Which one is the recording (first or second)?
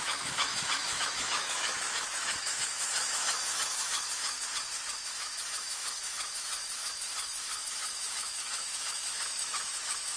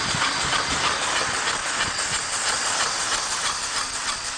second